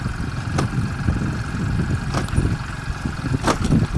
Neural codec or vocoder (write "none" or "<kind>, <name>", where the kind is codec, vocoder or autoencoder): none